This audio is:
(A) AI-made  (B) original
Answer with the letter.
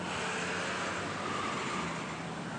B